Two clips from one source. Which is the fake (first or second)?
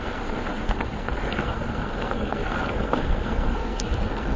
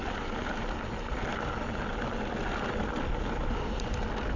first